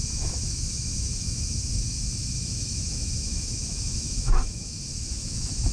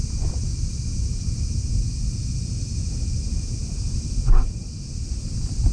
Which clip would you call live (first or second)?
second